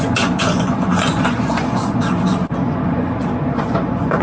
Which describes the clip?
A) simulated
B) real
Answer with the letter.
A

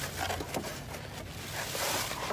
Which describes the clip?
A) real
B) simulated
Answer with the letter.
A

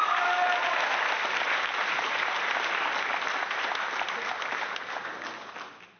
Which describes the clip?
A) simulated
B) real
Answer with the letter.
B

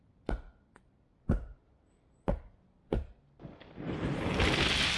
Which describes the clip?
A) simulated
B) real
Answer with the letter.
B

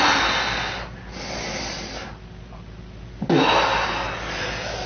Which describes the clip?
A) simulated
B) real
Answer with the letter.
B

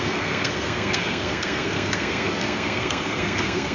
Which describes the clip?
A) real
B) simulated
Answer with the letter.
B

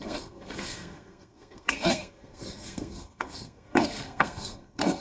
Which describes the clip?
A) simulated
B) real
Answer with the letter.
A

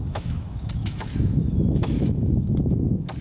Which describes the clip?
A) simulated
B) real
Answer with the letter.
A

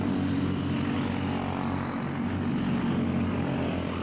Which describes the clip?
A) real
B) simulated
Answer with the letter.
A